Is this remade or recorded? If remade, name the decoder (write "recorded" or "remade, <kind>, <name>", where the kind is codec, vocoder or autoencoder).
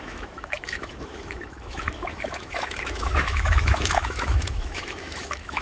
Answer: remade, autoencoder, DAC-VAE